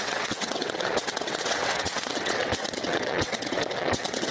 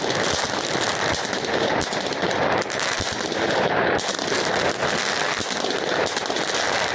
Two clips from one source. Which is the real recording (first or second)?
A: second